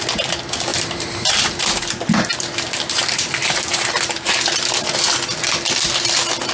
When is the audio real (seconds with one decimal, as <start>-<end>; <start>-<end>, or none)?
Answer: 0.0-0.7; 4.3-6.5